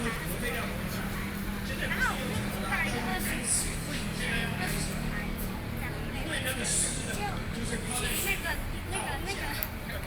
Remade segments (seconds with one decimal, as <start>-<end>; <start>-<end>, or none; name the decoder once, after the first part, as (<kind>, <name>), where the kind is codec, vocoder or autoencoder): 3.1-5.6 (codec, DAC); 6.3-8.5